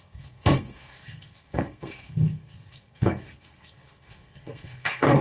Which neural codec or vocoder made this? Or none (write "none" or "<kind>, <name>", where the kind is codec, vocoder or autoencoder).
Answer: codec, SNAC